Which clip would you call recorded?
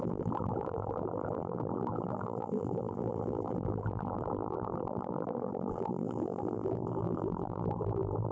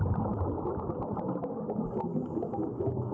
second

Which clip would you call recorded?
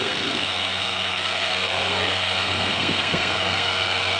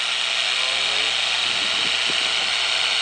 second